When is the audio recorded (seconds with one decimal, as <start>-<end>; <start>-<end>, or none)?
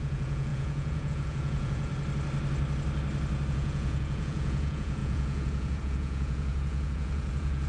1.9-3.5